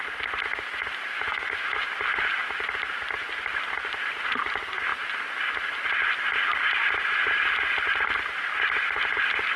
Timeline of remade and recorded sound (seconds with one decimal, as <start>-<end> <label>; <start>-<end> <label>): 0.0-1.1 recorded; 1.1-1.9 remade; 1.9-9.6 recorded